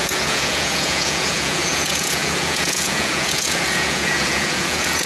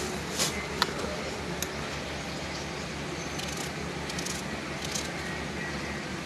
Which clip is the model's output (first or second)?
first